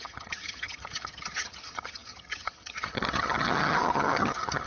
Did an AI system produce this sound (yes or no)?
yes